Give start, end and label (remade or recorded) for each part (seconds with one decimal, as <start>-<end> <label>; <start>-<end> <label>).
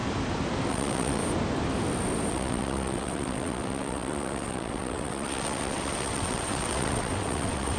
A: 0.0-0.7 recorded; 0.7-1.2 remade; 1.2-2.3 recorded; 2.3-7.8 remade